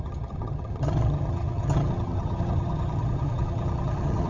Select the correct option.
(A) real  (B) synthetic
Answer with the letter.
B